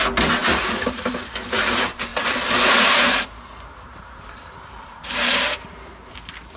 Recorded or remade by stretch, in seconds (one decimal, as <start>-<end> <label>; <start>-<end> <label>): 0.0-0.4 recorded; 0.4-1.1 remade; 1.1-2.1 recorded; 2.1-6.1 remade; 6.1-6.6 recorded